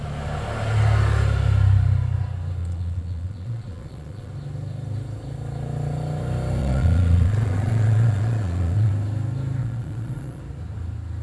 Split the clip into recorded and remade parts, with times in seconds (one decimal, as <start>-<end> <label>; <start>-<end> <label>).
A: 0.0-2.6 recorded; 2.6-4.3 remade; 4.3-6.6 recorded; 6.6-8.9 remade; 8.9-9.6 recorded; 9.6-10.4 remade; 10.4-11.2 recorded